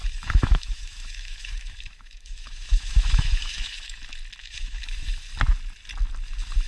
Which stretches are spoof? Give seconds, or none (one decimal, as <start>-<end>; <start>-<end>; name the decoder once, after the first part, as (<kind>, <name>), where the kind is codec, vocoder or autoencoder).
0.0-4.0 (autoencoder, DAC-VAE); 4.4-5.2